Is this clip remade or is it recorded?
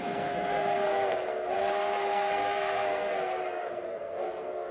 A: remade